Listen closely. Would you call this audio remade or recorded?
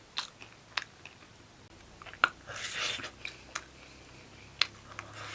recorded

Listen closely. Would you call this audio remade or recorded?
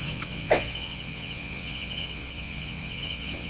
remade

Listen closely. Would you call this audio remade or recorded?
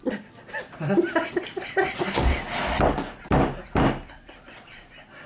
recorded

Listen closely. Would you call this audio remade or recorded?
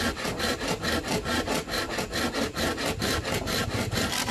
recorded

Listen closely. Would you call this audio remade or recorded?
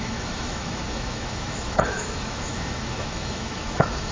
remade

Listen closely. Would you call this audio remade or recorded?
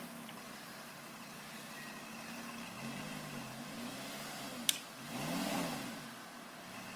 recorded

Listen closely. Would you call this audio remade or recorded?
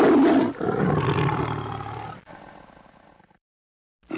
recorded